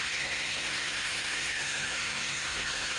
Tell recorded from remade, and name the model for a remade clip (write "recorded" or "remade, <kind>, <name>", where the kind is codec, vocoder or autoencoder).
remade, codec, SNAC